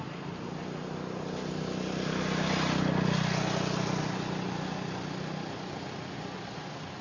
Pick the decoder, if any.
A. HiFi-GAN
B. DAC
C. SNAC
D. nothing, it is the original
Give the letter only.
D